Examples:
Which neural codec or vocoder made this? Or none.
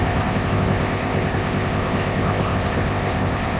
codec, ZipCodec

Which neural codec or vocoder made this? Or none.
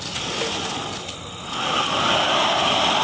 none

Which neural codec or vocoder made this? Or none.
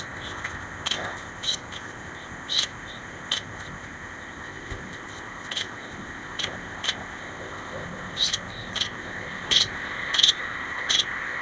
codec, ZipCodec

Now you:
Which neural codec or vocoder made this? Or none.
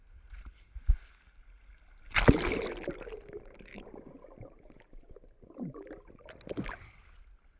none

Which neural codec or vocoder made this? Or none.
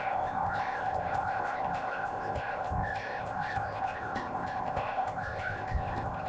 codec, ZipCodec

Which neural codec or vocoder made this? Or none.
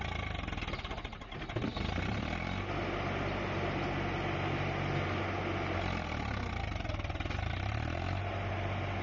none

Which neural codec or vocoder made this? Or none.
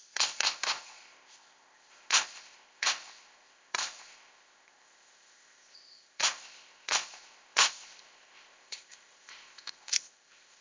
codec, ZipCodec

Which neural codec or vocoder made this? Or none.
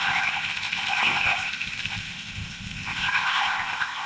codec, ZipCodec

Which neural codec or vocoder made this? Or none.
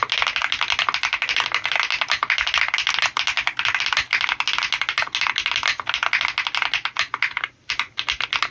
none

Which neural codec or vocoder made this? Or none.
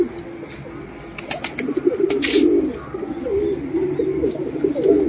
none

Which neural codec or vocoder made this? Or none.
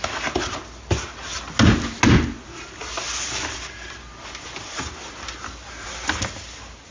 none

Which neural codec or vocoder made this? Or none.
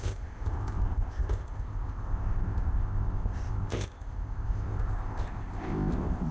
codec, ZipCodec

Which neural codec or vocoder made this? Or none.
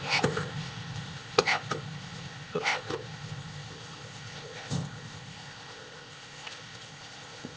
codec, ZipCodec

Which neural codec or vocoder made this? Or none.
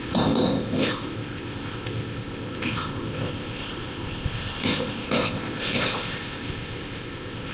codec, ZipCodec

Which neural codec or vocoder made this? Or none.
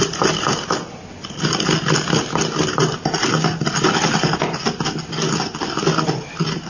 none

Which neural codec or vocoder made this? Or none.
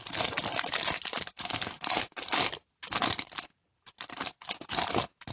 none